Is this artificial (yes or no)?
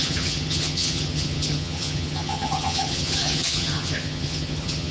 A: yes